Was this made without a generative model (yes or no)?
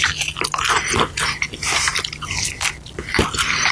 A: no